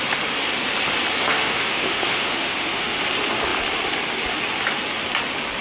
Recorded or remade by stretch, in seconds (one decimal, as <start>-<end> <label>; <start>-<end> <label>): 0.0-1.2 recorded; 1.2-3.0 remade; 3.0-5.6 recorded